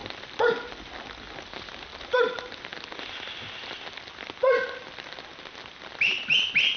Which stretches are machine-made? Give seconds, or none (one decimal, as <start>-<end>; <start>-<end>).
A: none

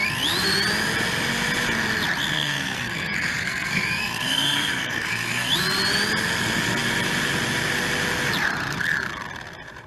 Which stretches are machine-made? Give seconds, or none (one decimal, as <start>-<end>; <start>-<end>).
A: 2.3-5.5